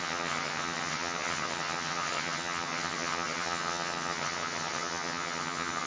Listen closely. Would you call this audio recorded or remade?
remade